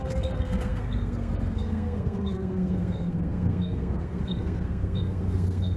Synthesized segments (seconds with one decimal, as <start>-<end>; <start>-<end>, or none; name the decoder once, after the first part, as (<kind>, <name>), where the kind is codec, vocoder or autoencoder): 0.0-5.8 (codec, SNAC)